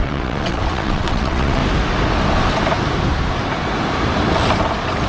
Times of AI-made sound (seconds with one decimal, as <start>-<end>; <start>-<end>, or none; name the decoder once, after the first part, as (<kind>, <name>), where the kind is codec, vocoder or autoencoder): 0.0-1.6 (vocoder, WaveNeXt)